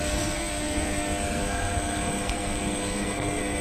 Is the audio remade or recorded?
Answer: remade